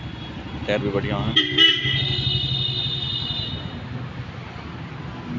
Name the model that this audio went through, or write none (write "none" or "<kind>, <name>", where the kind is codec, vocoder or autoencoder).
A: none